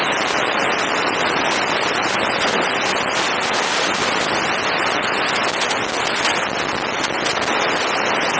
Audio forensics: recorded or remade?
recorded